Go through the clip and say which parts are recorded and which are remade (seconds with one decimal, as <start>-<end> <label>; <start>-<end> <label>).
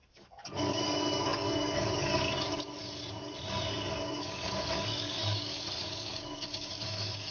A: 0.0-2.8 remade; 2.8-4.2 recorded; 4.2-7.3 remade